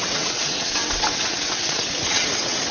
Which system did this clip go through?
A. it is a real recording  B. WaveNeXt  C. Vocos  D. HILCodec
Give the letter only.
B